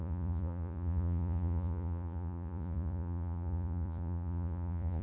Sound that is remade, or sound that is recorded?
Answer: remade